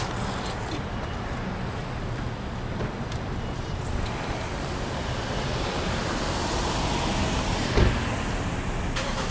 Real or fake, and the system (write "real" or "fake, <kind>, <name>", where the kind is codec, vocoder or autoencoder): real